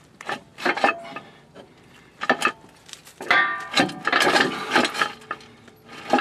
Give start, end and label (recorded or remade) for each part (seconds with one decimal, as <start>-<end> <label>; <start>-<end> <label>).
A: 0.0-3.0 remade; 3.0-6.2 recorded